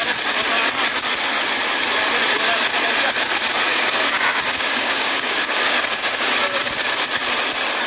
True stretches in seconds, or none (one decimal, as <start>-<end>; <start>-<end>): 0.0-3.7; 6.3-7.9